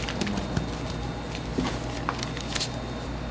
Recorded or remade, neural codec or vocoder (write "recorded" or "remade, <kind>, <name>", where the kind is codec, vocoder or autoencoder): recorded